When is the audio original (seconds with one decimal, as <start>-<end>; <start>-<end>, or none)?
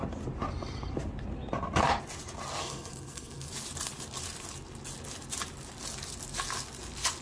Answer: 0.0-2.6; 3.5-7.2